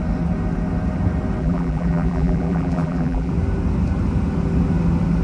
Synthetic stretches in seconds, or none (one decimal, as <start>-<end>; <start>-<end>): 1.4-3.3